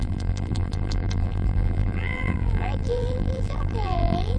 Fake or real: fake